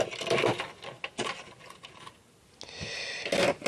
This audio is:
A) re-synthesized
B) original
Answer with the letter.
B